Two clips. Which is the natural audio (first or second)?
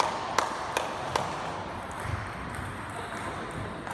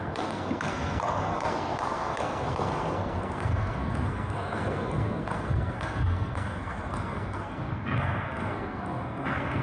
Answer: first